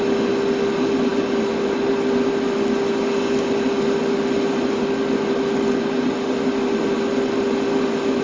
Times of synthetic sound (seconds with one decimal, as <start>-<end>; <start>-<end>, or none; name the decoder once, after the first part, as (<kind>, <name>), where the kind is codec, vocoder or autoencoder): none